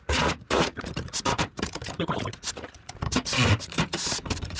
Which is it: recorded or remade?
remade